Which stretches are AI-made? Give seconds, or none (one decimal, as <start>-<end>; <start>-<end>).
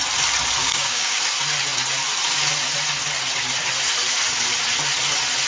0.6-1.2